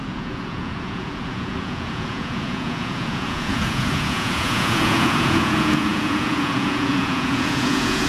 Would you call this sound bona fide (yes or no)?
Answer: no